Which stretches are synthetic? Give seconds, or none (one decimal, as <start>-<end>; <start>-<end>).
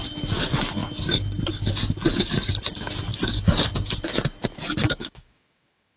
4.8-6.0